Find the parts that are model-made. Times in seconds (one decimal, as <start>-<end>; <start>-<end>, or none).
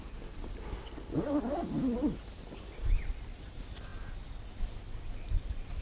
none